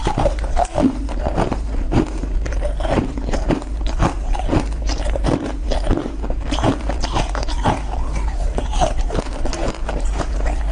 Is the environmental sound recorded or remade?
remade